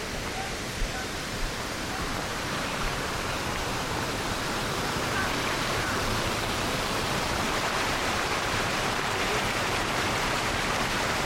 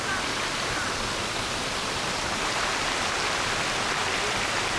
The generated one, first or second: first